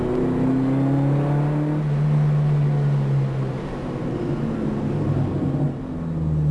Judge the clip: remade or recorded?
recorded